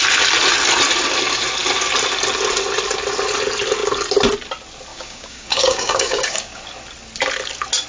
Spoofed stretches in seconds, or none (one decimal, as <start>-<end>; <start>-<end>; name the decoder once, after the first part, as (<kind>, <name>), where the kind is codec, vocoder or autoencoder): 4.9-6.6 (codec, DAC)